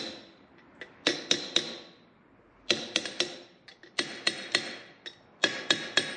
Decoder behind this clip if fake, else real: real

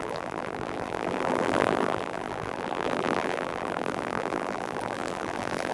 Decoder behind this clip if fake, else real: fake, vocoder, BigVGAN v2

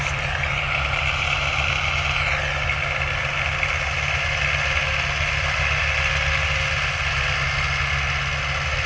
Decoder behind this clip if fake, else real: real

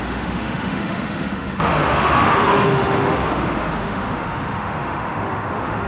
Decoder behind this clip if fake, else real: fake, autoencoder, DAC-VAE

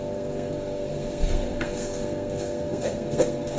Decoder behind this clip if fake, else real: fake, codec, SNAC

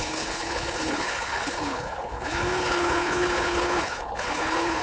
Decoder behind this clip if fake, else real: fake, codec, HILCodec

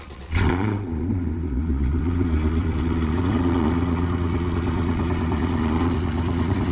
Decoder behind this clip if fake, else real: fake, vocoder, Vocos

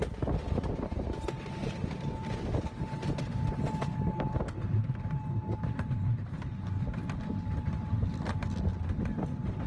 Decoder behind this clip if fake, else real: real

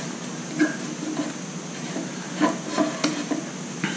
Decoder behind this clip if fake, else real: real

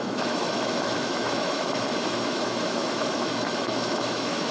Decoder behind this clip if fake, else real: fake, autoencoder, DAC-VAE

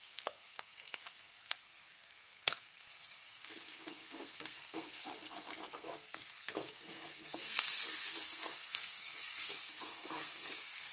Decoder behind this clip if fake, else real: fake, codec, SNAC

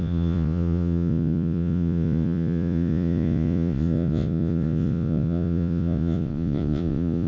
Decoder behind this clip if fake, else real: fake, vocoder, Vocos